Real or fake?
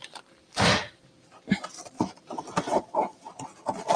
fake